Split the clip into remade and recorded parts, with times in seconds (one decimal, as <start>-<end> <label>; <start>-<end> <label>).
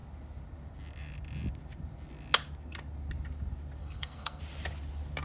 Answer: 0.0-3.8 recorded; 3.8-4.4 remade; 4.4-5.2 recorded